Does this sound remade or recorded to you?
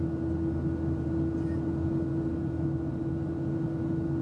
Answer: recorded